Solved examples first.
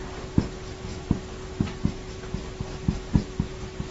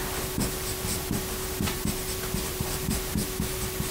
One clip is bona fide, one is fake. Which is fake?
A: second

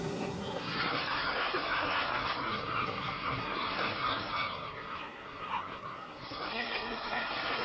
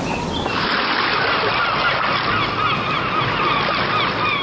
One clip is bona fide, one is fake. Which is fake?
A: first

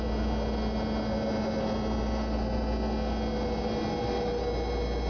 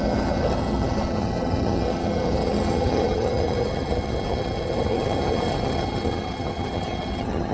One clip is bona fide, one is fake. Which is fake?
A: second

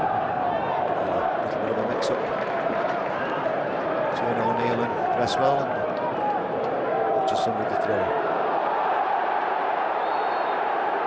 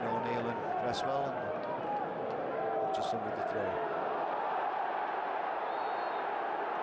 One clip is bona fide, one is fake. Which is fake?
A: first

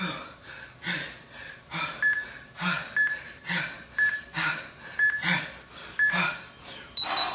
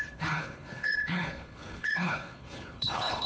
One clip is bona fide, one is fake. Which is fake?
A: second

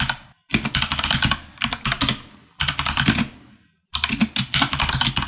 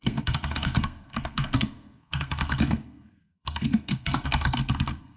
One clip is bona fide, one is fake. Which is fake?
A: second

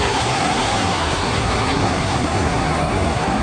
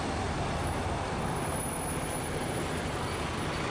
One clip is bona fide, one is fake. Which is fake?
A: first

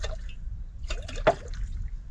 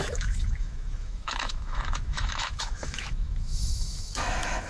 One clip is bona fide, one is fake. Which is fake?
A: second